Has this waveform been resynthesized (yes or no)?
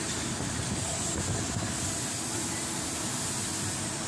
no